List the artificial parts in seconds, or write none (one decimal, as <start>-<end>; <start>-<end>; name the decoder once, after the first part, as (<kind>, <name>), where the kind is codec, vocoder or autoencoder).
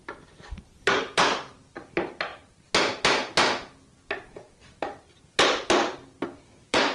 0.0-2.3 (vocoder, BigVGAN v2); 6.4-6.9